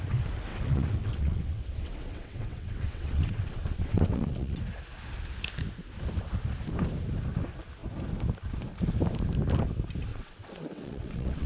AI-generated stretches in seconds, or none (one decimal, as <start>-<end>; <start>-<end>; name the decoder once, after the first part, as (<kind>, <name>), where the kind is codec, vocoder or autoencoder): 0.5-4.6 (vocoder, WaveNeXt); 10.1-11.5